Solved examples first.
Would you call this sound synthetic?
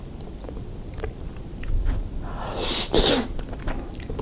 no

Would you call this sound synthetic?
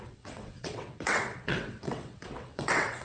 yes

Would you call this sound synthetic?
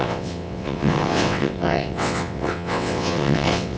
yes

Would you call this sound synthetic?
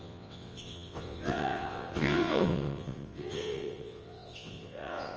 yes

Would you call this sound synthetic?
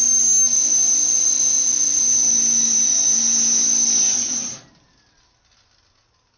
no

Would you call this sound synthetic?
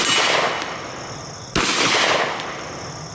no